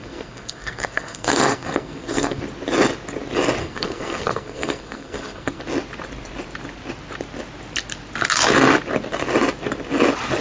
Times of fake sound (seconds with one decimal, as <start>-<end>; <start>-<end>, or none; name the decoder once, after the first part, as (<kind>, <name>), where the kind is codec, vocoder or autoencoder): 0.0-2.4 (codec, SNAC); 3.6-5.6